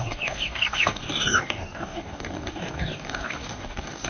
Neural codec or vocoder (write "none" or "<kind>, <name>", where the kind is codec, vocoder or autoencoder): codec, DAC